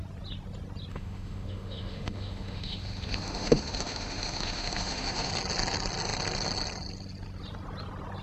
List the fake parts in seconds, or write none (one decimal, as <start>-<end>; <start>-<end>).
0.9-5.3